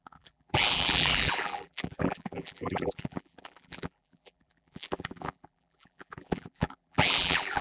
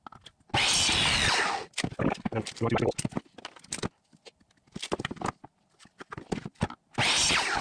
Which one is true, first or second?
second